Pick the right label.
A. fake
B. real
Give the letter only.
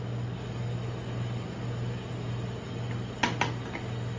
B